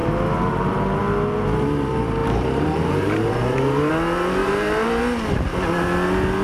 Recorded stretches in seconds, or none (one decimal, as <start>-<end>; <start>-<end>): 1.0-2.2; 3.9-4.4; 5.0-6.4